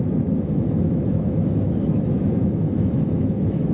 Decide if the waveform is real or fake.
fake